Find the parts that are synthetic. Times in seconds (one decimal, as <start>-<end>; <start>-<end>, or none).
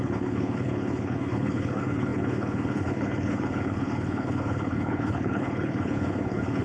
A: 0.0-6.6